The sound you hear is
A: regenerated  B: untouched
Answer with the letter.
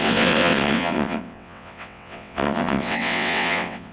A